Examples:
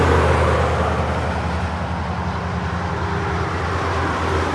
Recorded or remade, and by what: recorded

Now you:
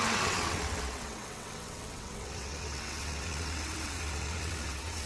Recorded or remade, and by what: remade, vocoder, WaveNeXt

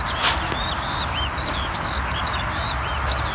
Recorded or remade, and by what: recorded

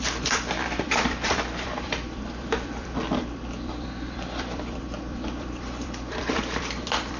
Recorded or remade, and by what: remade, vocoder, BigVGAN v2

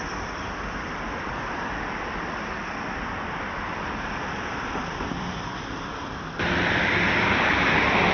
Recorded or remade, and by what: remade, vocoder, BigVGAN v2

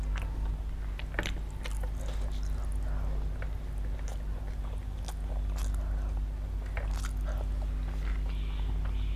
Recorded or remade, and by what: recorded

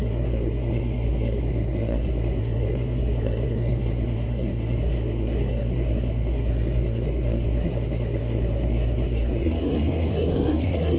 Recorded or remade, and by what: remade, codec, SNAC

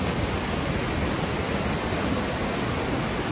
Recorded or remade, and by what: recorded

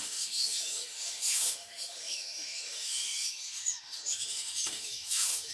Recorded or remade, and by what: remade, autoencoder, DAC-VAE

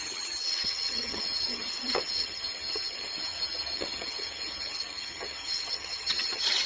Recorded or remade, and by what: remade, vocoder, HiFi-GAN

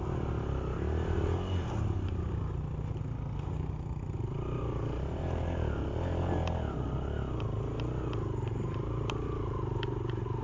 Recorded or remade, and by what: recorded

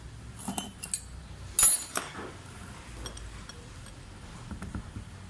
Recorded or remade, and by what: recorded